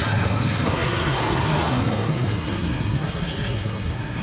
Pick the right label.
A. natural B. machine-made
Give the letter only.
B